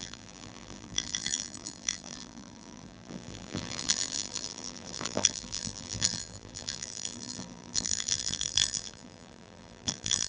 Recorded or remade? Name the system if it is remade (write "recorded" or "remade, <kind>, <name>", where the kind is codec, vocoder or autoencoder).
remade, vocoder, BigVGAN v2